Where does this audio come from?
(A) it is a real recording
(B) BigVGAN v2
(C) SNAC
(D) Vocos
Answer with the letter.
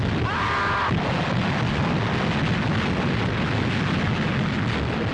A